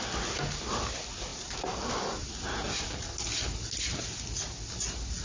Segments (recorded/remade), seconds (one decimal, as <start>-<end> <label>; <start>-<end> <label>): 0.0-5.2 recorded